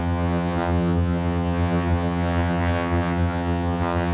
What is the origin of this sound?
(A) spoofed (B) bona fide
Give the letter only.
A